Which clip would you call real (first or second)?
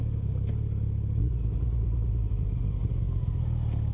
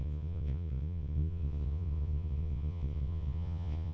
first